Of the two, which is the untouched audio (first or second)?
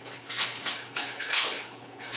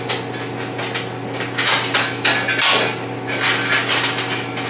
second